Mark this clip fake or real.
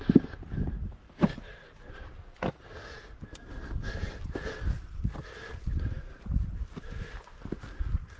real